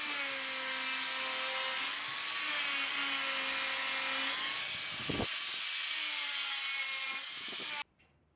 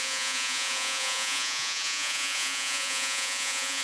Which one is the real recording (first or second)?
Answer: first